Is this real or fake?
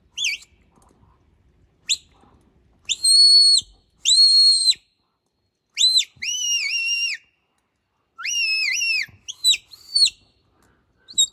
real